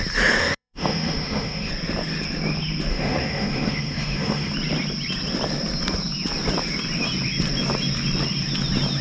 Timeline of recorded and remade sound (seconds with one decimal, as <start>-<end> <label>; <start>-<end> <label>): 0.0-0.4 recorded; 0.4-1.7 remade; 1.7-2.9 recorded; 2.9-4.5 remade; 4.5-9.0 recorded

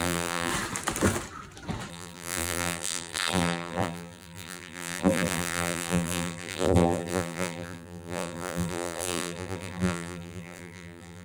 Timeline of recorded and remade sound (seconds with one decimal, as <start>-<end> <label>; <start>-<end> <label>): 0.0-0.5 remade; 0.5-1.9 recorded; 1.9-11.2 remade